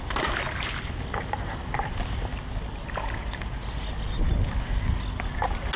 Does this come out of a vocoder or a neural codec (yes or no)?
no